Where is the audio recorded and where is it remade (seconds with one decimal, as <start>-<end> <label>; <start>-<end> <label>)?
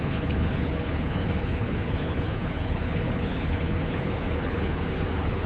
0.0-5.5 remade